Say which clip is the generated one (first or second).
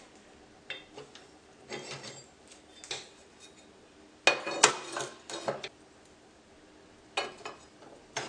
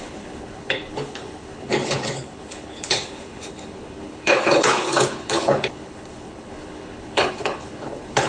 second